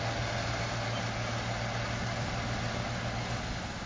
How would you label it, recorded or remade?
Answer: recorded